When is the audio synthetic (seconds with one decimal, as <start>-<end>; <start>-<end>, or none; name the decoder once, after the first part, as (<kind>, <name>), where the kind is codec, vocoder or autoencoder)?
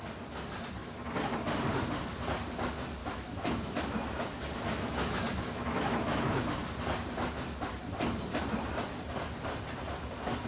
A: 3.0-6.4 (autoencoder, DAC-VAE)